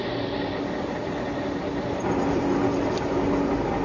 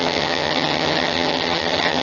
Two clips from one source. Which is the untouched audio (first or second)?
first